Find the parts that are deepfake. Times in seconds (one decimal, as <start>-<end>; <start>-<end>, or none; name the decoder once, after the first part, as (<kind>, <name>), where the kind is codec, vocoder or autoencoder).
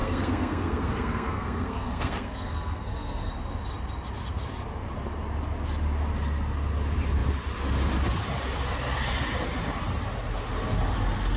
0.0-3.3 (codec, SNAC)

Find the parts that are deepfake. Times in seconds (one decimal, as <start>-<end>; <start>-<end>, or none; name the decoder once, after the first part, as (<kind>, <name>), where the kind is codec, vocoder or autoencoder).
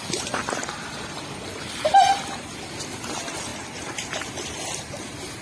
0.0-3.5 (vocoder, BigVGAN v2); 4.1-5.4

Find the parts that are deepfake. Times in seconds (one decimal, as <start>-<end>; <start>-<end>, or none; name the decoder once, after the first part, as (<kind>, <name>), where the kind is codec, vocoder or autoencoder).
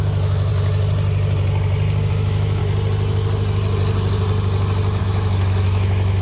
0.0-0.5 (autoencoder, DAC-VAE); 2.1-2.6; 5.0-6.2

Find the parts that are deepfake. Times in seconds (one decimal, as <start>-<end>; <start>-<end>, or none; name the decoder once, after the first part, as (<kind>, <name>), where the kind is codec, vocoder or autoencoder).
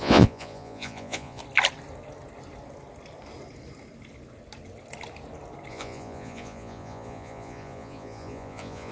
0.0-1.4 (vocoder, Vocos); 5.7-8.9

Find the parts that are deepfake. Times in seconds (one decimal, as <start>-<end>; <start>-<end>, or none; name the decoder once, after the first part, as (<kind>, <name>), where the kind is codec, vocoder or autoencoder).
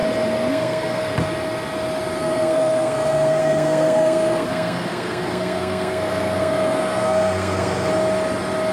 0.5-1.1 (codec, SNAC); 2.2-7.9